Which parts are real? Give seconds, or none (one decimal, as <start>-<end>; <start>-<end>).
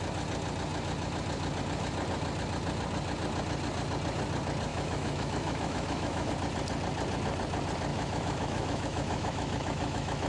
0.0-4.7; 6.3-7.9